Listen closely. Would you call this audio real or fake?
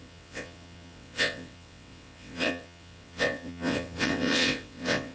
fake